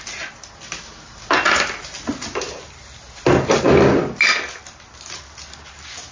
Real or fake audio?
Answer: real